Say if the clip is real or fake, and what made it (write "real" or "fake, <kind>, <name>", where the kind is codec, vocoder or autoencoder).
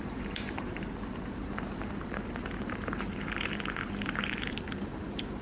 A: fake, vocoder, BigVGAN v2